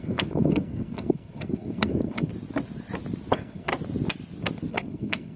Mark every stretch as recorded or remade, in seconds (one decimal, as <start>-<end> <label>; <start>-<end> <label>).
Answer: 0.0-2.3 remade; 2.3-3.3 recorded; 3.3-3.7 remade; 3.7-4.7 recorded; 4.7-5.4 remade